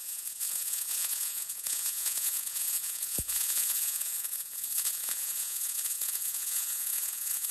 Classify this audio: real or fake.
fake